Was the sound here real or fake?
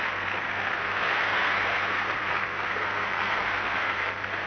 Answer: fake